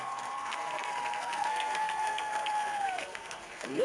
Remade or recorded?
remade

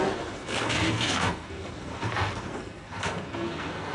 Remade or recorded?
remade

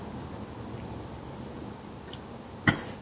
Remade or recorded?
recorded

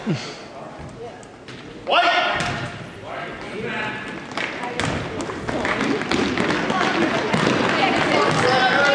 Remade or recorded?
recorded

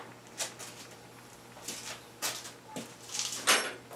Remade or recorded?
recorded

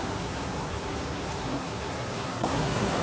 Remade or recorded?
remade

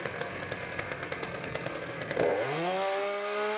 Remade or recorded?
remade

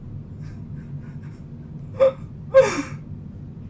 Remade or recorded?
recorded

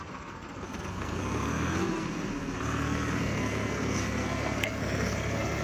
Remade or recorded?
remade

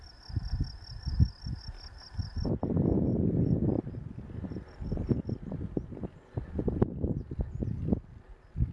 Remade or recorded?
recorded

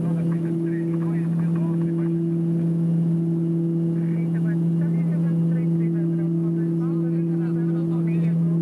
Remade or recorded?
recorded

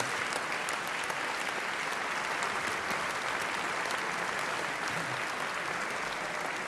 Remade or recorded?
recorded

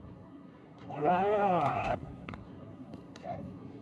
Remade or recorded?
remade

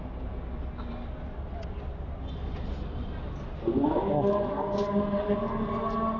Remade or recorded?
recorded